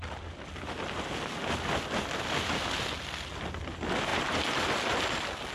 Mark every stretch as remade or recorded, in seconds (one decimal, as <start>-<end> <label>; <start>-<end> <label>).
0.0-5.5 recorded